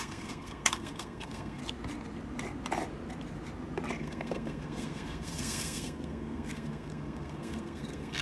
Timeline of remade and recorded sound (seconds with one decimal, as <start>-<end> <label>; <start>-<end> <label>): 0.0-1.6 remade; 1.6-4.0 recorded; 4.0-8.2 remade